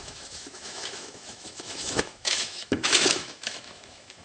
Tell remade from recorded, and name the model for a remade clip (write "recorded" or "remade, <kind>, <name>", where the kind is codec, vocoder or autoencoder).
remade, autoencoder, DAC-VAE